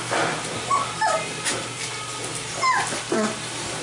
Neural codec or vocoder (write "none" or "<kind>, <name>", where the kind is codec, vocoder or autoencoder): none